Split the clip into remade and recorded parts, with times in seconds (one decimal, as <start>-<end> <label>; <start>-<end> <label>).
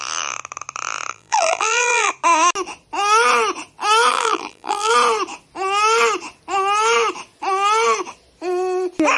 0.0-1.1 recorded; 1.1-2.1 remade; 2.1-4.1 recorded; 4.1-4.9 remade; 4.9-9.2 recorded